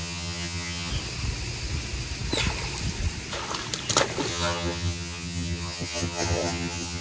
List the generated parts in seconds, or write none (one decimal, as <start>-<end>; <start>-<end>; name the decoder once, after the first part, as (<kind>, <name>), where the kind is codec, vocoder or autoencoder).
0.0-0.9 (vocoder, HiFi-GAN); 4.3-7.0